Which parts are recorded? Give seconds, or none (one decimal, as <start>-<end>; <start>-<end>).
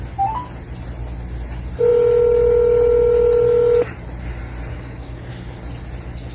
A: 0.0-4.7; 5.3-6.3